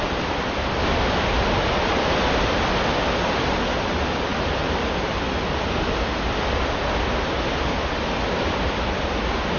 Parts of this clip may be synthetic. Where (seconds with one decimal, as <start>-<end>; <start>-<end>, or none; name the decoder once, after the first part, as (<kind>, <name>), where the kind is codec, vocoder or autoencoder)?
none